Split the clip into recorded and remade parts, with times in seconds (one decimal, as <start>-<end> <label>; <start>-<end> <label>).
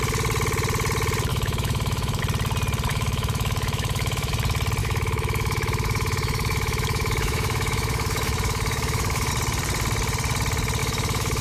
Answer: 0.0-1.3 recorded; 1.3-2.2 remade; 2.2-2.9 recorded; 2.9-4.3 remade; 4.3-4.8 recorded; 4.8-9.3 remade; 9.3-10.8 recorded; 10.8-11.4 remade